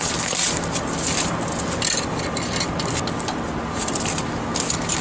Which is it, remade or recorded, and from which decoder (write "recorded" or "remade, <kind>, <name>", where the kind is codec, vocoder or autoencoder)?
recorded